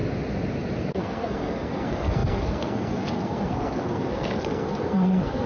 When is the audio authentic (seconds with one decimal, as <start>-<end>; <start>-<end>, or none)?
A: 0.0-0.8